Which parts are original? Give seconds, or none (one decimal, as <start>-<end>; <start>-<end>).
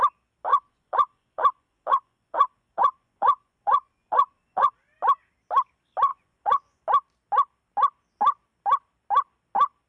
0.0-0.5; 4.7-6.1; 6.8-9.9